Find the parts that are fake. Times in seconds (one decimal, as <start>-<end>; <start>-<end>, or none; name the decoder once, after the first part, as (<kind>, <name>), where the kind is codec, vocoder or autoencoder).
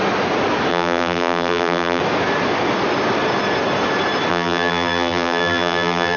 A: 0.7-2.0 (vocoder, BigVGAN v2); 4.3-6.2